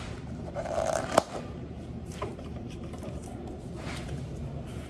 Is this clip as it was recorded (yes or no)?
no